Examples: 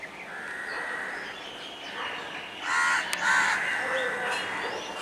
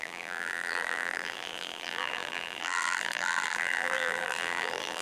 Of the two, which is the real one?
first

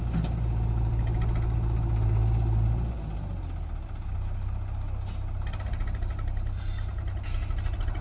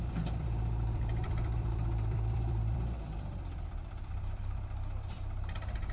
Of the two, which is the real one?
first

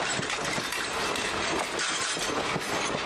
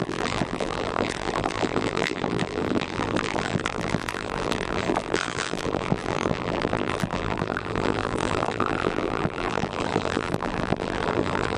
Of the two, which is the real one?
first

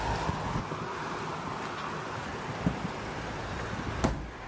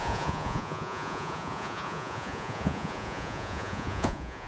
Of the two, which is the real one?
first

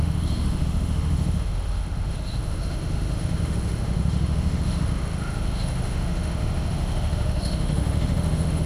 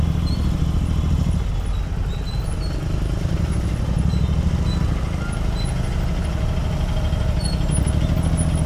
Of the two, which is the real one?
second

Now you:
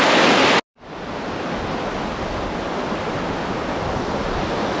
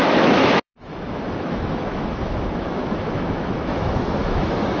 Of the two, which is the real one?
first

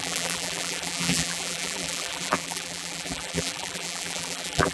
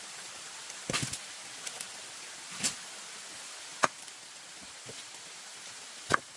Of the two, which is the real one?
second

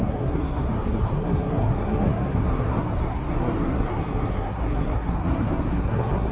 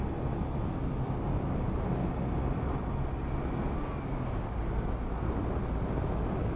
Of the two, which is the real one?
second